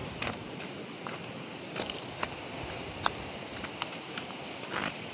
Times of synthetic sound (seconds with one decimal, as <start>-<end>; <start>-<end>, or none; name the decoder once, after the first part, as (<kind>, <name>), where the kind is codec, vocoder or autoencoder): none